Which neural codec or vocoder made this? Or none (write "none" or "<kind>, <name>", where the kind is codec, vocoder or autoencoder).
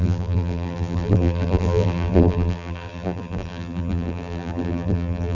vocoder, BigVGAN v2